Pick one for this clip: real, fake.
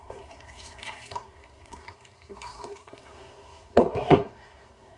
fake